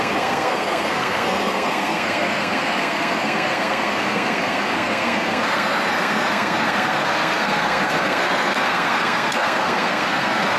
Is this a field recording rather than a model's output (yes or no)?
no